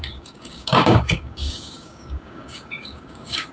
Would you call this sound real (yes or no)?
no